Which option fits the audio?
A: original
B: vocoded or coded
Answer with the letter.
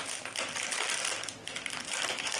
B